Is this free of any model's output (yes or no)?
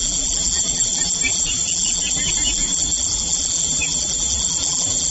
no